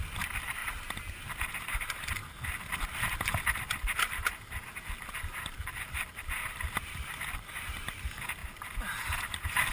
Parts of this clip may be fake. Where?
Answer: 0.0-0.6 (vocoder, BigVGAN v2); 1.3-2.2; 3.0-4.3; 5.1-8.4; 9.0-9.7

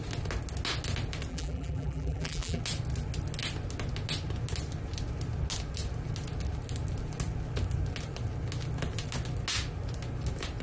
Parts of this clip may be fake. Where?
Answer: 1.3-2.6 (vocoder, BigVGAN v2)

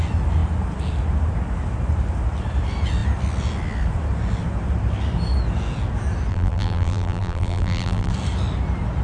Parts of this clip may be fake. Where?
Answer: 6.3-8.1 (vocoder, BigVGAN v2)

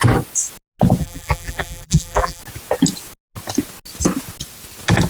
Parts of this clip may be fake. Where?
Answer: 1.0-2.4 (vocoder, BigVGAN v2)

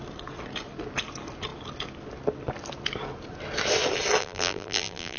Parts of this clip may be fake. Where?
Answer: 4.2-5.2 (vocoder, BigVGAN v2)

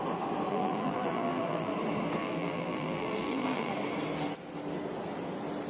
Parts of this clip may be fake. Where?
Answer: 0.5-1.7 (vocoder, BigVGAN v2); 2.2-3.7

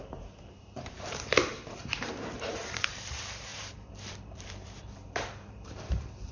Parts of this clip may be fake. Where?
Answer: 0.0-6.3 (vocoder, BigVGAN v2)